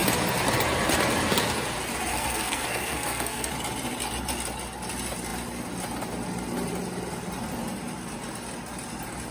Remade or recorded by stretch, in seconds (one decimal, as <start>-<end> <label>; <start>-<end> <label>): 0.0-2.1 recorded; 2.1-3.5 remade; 3.5-9.3 recorded